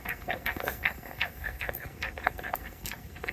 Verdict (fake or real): fake